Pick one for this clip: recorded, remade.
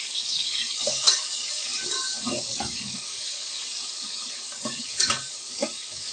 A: remade